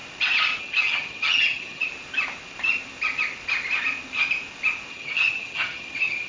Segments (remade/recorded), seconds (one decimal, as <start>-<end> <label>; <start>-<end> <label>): 0.0-0.6 recorded; 0.6-1.9 remade; 1.9-4.9 recorded; 4.9-6.3 remade